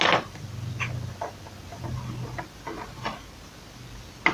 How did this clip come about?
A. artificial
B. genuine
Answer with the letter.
B